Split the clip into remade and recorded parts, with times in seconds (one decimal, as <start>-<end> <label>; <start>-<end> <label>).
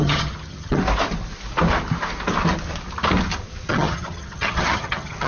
0.0-0.8 remade; 0.8-3.7 recorded; 3.7-5.3 remade